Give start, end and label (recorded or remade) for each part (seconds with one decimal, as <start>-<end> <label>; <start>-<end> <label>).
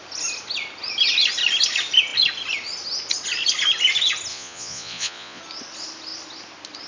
0.0-4.3 recorded; 4.3-5.4 remade; 5.4-6.9 recorded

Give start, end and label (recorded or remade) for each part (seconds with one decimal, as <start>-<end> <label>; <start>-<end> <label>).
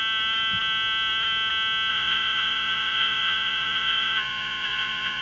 0.0-1.9 recorded; 1.9-5.2 remade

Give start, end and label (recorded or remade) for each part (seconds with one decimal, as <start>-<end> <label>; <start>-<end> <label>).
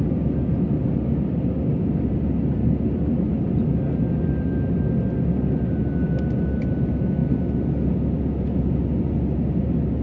0.0-10.0 recorded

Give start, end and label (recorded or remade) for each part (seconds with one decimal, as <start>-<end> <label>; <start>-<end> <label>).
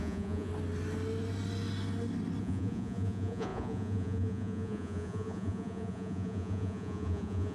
0.0-0.5 remade; 0.5-2.4 recorded; 2.4-7.5 remade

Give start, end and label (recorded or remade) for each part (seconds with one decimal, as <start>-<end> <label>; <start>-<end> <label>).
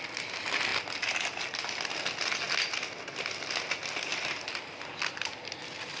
0.0-6.0 recorded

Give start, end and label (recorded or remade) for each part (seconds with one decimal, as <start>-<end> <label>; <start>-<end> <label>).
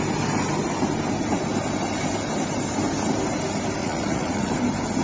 0.0-3.8 recorded; 3.8-4.5 remade; 4.5-5.0 recorded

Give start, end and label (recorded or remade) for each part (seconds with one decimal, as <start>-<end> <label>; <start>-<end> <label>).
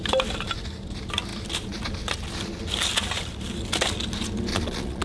0.0-4.5 recorded; 4.5-5.0 remade